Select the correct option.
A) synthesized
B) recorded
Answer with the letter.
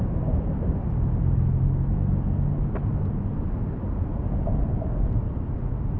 B